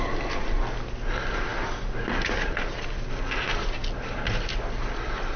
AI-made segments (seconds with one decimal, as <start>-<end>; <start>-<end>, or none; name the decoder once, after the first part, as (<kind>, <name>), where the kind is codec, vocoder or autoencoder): none